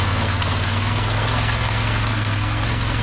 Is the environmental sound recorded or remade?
remade